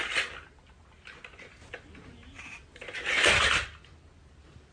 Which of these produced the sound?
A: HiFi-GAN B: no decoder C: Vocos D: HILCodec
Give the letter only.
B